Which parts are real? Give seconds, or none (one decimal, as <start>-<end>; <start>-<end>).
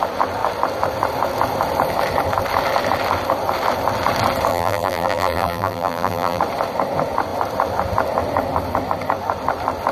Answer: 0.0-4.5; 6.4-9.9